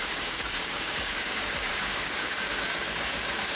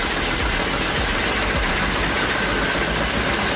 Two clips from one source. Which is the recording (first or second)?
second